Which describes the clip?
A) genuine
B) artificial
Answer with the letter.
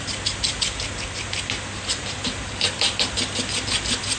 A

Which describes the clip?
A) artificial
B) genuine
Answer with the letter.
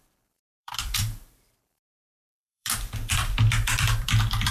A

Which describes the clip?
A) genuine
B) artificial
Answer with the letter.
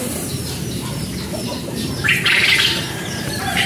B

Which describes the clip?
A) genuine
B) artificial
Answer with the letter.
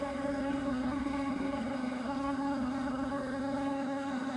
B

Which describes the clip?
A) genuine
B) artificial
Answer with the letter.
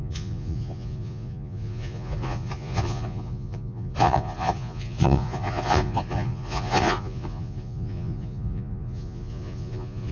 B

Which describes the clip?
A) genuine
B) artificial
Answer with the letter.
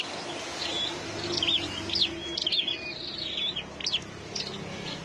A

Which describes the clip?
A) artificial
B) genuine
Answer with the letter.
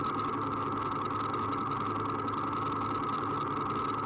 B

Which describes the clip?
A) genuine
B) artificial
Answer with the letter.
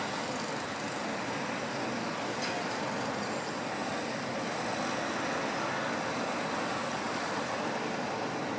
A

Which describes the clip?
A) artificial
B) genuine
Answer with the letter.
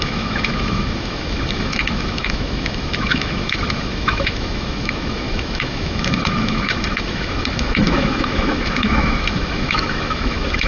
A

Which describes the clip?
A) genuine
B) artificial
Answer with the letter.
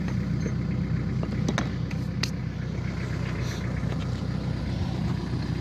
A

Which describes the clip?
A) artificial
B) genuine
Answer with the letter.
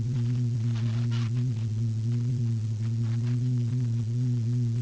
A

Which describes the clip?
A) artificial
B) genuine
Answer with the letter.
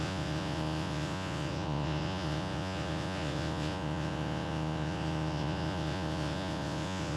A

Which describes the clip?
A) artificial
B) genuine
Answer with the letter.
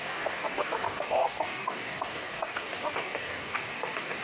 A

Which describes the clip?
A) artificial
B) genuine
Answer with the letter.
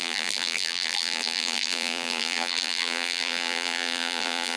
A